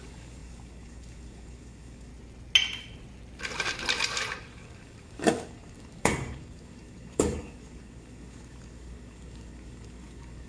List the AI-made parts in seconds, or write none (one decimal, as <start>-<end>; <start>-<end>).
0.0-2.1; 4.5-10.5